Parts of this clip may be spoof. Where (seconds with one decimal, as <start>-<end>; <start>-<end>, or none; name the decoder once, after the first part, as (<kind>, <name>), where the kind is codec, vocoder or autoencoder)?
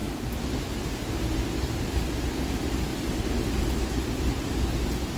none